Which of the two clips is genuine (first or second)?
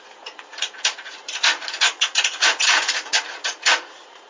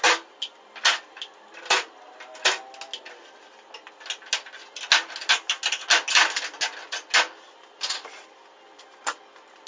second